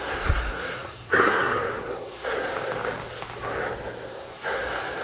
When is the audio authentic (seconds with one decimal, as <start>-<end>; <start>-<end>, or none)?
2.5-4.1